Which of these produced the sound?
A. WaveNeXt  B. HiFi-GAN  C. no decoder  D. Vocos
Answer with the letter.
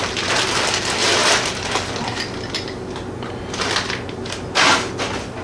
C